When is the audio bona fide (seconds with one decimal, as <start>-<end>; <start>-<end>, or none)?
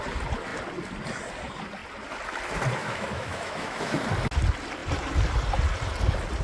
0.0-2.8; 4.0-6.4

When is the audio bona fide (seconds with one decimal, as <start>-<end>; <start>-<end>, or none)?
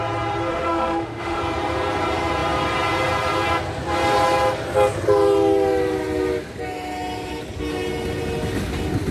0.0-0.5; 1.4-9.1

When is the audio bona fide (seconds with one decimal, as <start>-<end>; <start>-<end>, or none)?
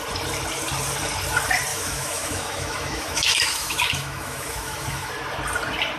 0.0-1.7; 5.1-6.0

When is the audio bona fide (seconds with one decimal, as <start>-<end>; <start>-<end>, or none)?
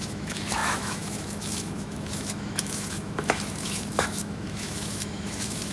none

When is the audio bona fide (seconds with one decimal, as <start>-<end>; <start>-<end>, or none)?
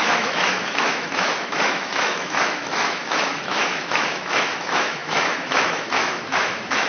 none